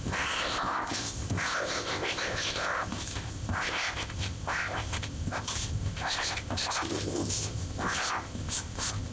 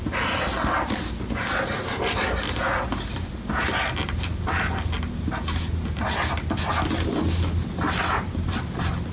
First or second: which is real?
second